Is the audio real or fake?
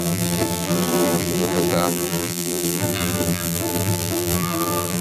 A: fake